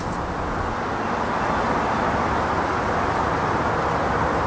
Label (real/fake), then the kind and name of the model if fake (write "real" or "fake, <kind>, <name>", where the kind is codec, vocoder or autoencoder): real